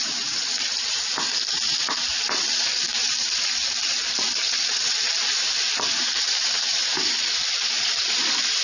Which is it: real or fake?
fake